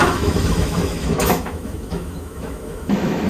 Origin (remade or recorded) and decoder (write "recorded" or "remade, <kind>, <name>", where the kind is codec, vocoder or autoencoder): remade, autoencoder, DAC-VAE